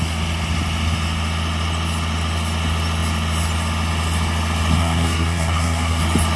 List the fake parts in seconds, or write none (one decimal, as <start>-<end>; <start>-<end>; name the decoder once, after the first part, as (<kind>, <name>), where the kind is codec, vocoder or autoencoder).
4.8-6.0 (codec, SNAC)